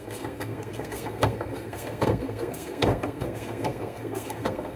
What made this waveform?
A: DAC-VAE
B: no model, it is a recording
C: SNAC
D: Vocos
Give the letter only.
C